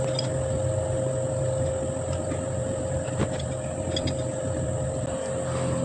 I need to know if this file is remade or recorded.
recorded